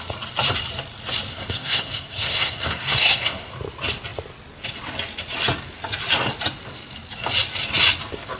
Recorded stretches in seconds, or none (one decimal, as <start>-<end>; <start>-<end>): 0.0-1.3; 3.5-8.4